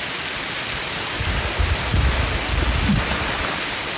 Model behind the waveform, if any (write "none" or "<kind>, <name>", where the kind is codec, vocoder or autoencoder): none